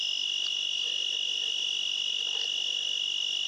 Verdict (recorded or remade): remade